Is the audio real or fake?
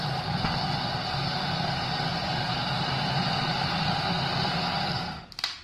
real